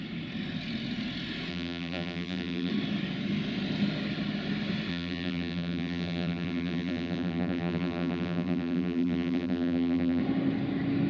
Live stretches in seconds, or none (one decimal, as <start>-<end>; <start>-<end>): 0.0-1.5; 2.7-4.9; 10.2-11.1